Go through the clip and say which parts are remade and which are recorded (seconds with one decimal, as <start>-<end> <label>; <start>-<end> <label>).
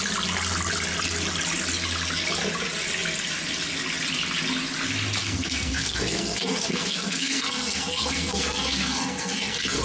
0.0-5.2 recorded; 5.2-9.8 remade